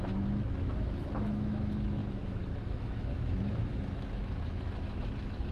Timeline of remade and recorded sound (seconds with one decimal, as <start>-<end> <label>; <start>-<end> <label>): 0.0-5.5 remade